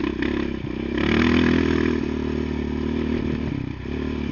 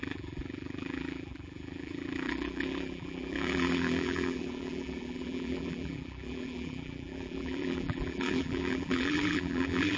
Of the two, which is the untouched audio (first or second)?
first